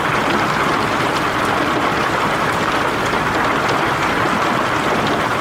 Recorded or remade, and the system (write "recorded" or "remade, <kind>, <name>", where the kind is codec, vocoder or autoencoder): recorded